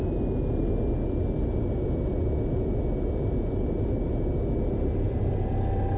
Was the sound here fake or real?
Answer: real